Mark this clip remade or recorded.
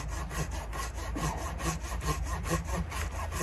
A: recorded